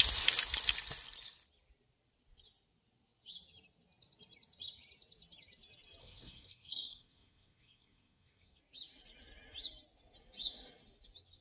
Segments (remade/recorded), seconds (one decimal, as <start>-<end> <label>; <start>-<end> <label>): 0.0-6.0 recorded; 6.0-8.6 remade; 8.6-11.4 recorded